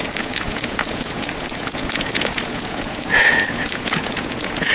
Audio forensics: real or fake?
fake